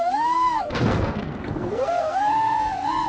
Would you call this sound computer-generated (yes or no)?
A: yes